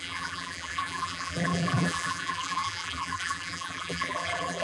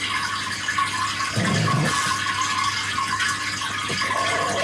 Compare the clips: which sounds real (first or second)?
second